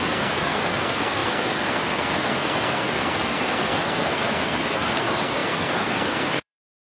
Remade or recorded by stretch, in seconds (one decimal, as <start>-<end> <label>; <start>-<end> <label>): 0.0-6.9 remade